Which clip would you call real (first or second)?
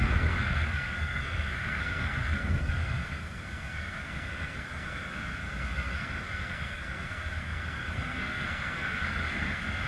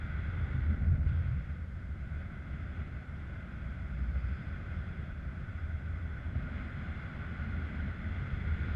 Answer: second